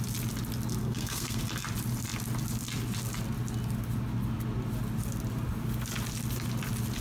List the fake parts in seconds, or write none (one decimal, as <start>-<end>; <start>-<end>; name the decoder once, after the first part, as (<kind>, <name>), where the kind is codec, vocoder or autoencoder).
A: 0.8-1.4 (codec, SNAC)